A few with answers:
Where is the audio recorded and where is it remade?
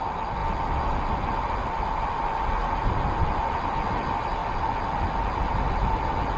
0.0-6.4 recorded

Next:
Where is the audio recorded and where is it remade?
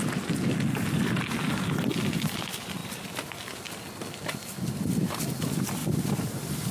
0.0-6.7 recorded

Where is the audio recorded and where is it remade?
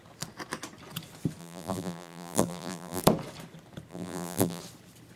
0.0-1.4 recorded; 1.4-3.0 remade; 3.0-3.9 recorded; 3.9-4.6 remade; 4.6-5.2 recorded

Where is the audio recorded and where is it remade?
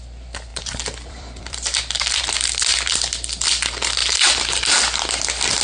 0.0-0.5 recorded; 0.5-2.2 remade; 2.2-4.0 recorded; 4.0-4.6 remade; 4.6-5.6 recorded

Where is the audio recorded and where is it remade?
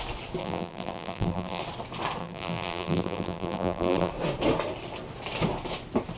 0.0-0.4 recorded; 0.4-1.6 remade; 1.6-2.2 recorded; 2.2-4.1 remade; 4.1-6.2 recorded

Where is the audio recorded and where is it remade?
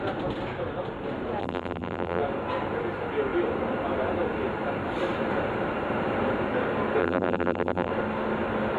0.0-1.4 recorded; 1.4-2.2 remade; 2.2-7.0 recorded; 7.0-7.9 remade; 7.9-8.8 recorded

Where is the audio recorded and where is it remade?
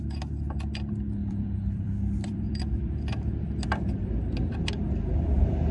0.0-1.2 recorded; 1.2-2.6 remade; 2.6-5.7 recorded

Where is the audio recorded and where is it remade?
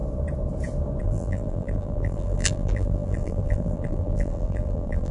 0.0-1.0 recorded; 1.0-5.1 remade